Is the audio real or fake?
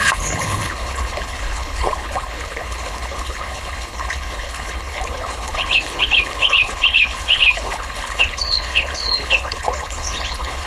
fake